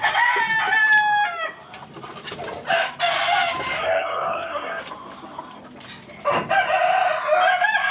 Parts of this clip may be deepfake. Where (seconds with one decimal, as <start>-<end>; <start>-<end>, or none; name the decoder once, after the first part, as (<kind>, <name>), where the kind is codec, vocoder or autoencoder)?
3.8-4.8 (codec, SNAC)